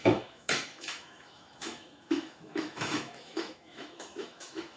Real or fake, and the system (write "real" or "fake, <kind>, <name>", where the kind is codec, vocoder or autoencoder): fake, autoencoder, DAC-VAE